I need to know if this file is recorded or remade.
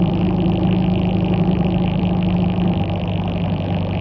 recorded